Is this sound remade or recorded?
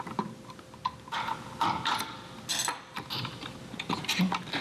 recorded